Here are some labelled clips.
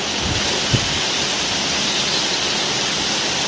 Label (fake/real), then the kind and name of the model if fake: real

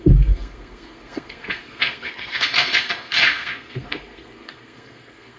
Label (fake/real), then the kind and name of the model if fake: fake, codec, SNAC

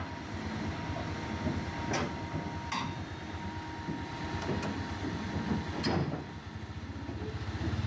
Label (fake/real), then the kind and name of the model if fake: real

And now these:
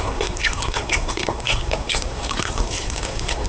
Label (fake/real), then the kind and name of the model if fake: fake, codec, SNAC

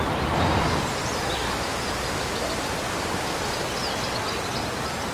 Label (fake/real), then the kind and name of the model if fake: real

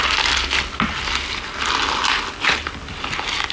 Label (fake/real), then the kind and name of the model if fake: real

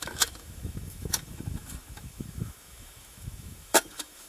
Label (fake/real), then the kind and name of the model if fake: fake, autoencoder, DAC-VAE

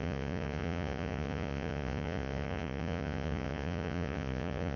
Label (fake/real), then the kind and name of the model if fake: fake, vocoder, Vocos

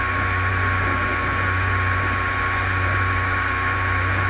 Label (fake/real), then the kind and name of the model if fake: fake, vocoder, Vocos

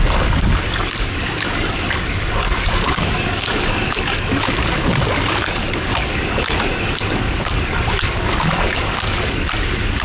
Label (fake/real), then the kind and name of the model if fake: fake, codec, DAC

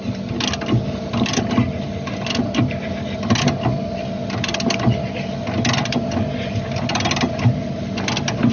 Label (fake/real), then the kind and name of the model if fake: real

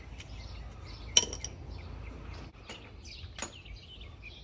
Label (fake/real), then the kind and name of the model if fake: real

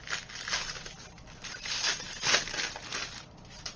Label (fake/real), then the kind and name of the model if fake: real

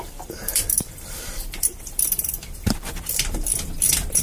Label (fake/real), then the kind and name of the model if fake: fake, vocoder, BigVGAN v2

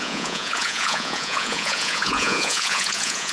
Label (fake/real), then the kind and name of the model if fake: fake, vocoder, Vocos